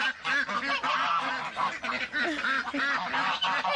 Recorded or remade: recorded